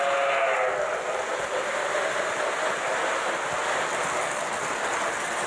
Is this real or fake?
real